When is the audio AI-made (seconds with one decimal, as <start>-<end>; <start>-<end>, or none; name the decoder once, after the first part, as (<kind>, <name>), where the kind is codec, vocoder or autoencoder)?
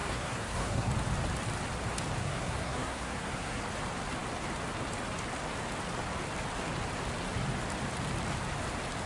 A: 0.0-0.9 (codec, SNAC); 2.2-3.6